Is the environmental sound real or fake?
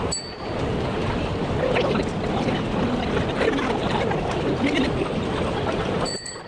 real